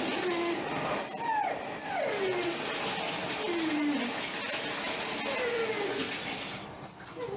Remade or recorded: recorded